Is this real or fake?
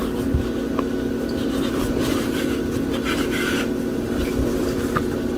real